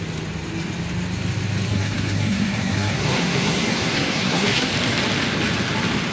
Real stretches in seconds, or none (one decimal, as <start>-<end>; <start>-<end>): 0.0-1.7; 4.7-6.1